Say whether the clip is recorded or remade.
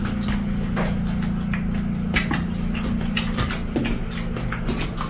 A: recorded